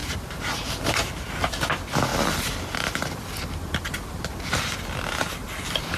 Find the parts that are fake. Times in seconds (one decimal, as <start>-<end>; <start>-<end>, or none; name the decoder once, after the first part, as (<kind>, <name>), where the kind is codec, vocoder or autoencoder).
0.0-1.3 (vocoder, BigVGAN v2); 2.1-6.0